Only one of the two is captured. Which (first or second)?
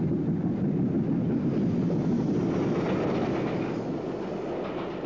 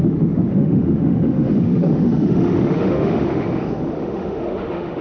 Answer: first